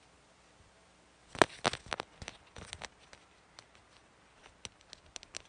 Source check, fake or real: real